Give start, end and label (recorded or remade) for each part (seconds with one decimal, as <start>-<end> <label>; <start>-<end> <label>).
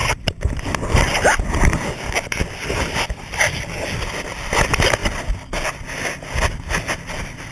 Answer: 0.0-7.5 recorded